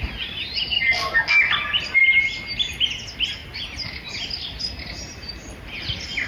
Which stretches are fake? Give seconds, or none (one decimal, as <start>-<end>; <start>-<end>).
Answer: none